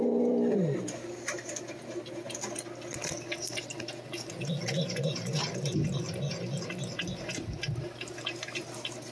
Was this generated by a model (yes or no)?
no